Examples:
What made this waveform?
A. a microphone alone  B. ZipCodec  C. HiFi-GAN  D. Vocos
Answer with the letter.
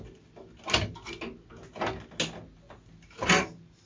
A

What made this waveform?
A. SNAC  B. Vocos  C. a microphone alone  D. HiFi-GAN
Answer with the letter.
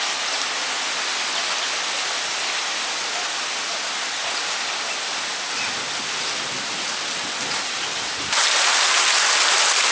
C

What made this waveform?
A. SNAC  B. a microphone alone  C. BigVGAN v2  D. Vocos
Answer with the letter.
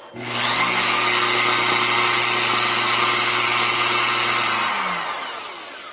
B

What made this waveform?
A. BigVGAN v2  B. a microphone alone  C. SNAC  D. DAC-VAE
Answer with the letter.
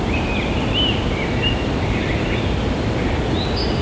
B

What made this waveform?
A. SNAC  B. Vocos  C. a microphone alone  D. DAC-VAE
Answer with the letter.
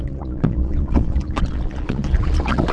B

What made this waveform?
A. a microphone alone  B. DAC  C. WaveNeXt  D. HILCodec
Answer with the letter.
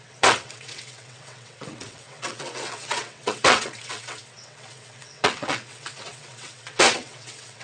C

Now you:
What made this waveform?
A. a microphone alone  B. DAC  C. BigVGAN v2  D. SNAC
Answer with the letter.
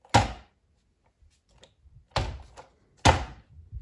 A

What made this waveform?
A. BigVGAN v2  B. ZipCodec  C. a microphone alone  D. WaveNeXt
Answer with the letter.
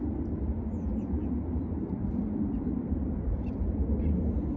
C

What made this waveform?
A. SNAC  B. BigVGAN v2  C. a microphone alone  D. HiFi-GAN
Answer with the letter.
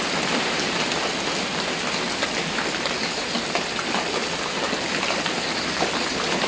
C